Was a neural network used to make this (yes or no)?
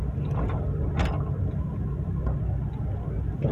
no